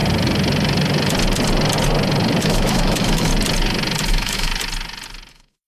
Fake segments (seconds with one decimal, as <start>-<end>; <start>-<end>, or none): 2.4-3.3; 4.1-4.5; 5.3-5.7